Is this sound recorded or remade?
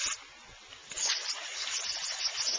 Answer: recorded